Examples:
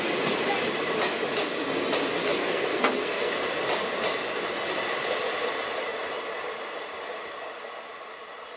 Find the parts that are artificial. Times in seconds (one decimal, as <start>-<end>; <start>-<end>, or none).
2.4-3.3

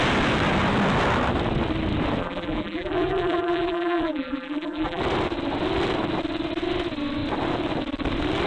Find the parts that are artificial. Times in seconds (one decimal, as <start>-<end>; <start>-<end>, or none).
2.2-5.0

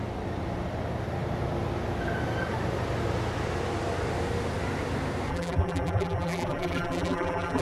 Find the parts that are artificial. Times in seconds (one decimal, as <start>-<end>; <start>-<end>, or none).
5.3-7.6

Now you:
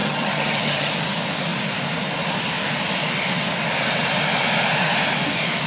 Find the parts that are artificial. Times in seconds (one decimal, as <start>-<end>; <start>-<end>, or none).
0.0-0.9

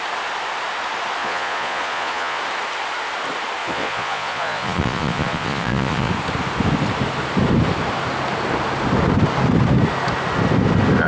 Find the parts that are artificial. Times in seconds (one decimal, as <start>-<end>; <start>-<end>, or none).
1.2-2.4; 3.6-6.1

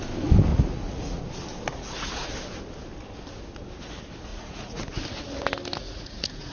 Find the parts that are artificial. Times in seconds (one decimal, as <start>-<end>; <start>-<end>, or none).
0.5-1.2; 1.7-2.3; 4.3-4.8; 5.8-6.5

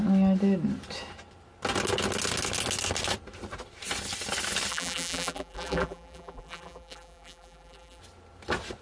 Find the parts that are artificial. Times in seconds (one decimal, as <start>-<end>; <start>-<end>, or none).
4.7-8.0

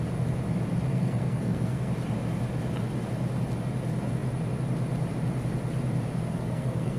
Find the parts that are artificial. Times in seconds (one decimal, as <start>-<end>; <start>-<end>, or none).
0.9-1.9; 6.3-7.0